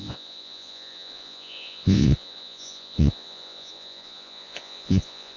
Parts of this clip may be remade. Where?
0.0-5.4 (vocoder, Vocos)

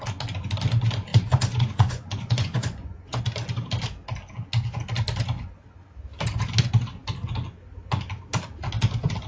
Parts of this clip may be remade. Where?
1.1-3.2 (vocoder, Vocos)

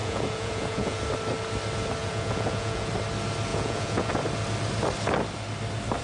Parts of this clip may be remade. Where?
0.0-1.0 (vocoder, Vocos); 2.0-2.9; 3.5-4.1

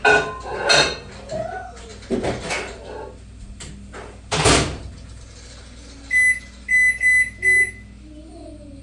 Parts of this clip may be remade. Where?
none

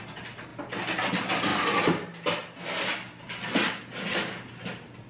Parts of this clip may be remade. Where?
none

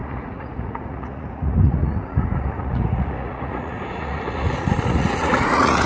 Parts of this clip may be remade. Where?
0.0-5.9 (vocoder, Vocos)